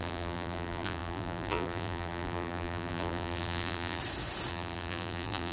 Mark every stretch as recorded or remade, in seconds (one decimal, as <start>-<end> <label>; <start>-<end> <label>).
0.0-4.0 remade; 4.0-4.5 recorded; 4.5-5.5 remade